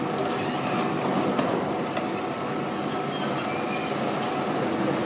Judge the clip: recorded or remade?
recorded